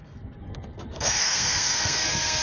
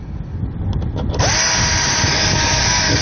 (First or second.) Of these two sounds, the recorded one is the second